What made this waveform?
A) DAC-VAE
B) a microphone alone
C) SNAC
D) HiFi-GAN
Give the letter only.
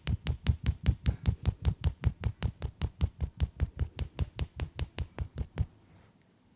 B